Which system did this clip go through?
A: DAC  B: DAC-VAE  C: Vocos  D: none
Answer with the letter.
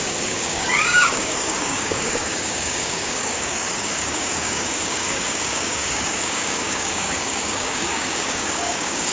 A